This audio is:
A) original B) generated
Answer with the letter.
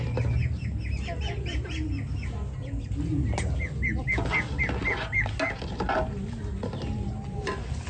A